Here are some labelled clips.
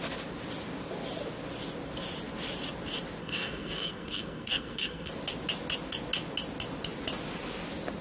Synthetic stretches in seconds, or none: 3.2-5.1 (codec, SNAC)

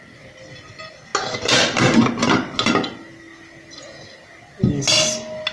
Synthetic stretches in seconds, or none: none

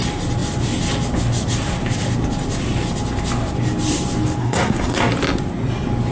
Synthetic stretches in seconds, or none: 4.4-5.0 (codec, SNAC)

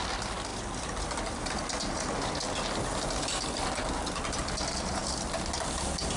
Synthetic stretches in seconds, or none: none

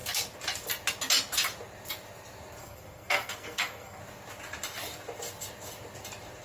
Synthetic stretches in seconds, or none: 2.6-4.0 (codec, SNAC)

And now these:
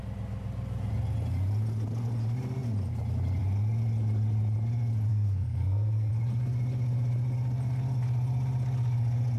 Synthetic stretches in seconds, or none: 5.1-6.1 (codec, SNAC)

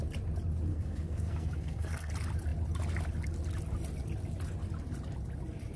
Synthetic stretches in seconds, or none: 0.7-2.1 (codec, SNAC)